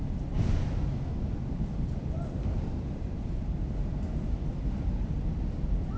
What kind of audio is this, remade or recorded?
recorded